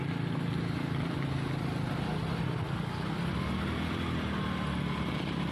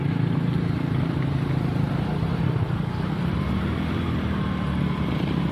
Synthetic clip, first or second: second